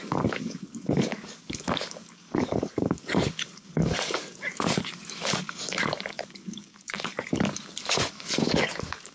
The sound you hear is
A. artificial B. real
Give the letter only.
A